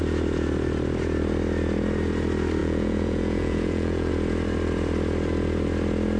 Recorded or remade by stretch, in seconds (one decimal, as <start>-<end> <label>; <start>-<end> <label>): 0.0-2.6 recorded; 2.6-4.1 remade; 4.1-6.2 recorded